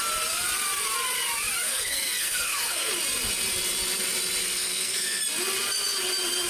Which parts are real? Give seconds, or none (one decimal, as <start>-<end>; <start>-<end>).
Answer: 0.0-1.6; 2.9-4.4; 5.2-6.5